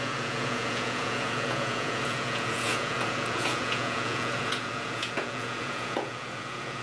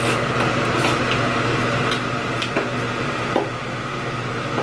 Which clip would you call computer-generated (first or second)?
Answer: first